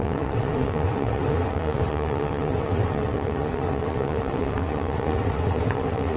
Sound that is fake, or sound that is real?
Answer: fake